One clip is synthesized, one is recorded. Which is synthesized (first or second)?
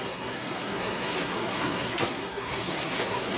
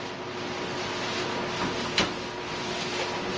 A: first